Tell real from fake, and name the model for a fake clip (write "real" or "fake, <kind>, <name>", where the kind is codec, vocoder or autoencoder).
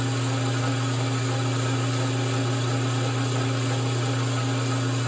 real